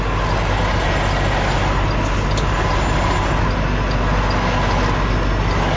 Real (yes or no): yes